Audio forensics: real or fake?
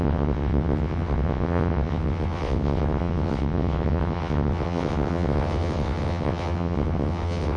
fake